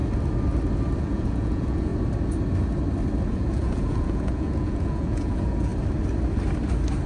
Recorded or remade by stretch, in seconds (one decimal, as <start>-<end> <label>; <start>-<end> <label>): 0.0-1.0 recorded; 1.0-1.9 remade; 1.9-3.2 recorded; 3.2-5.7 remade; 5.7-7.1 recorded

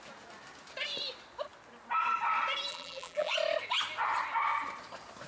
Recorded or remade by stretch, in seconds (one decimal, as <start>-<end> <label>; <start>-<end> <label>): 0.0-2.7 recorded; 2.7-3.3 remade; 3.3-5.3 recorded

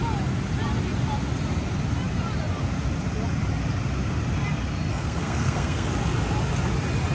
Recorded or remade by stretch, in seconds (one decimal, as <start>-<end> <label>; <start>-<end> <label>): 0.0-4.9 recorded; 4.9-5.9 remade; 5.9-7.1 recorded

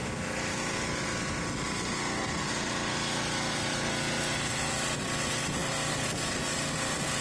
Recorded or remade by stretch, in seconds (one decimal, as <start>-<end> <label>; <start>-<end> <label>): 0.0-7.2 recorded

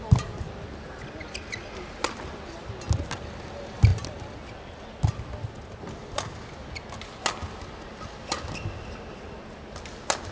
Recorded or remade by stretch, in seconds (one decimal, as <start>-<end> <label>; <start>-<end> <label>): 0.0-10.3 recorded

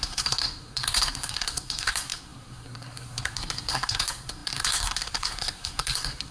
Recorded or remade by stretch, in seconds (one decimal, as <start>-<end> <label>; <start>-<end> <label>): 0.0-6.3 remade

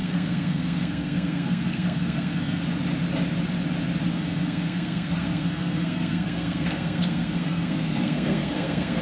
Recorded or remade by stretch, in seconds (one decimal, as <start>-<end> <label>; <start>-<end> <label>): 0.0-2.6 remade; 2.6-4.1 recorded; 4.1-9.0 remade